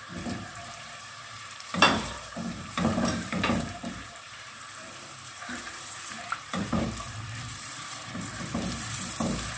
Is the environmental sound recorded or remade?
remade